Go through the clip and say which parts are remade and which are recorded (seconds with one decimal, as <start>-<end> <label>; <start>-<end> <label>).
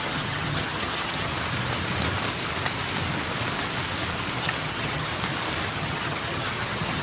0.0-1.3 remade; 1.3-4.4 recorded; 4.4-5.1 remade; 5.1-5.7 recorded; 5.7-7.0 remade